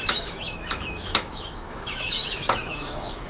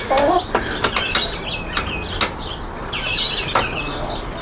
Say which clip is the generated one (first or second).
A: first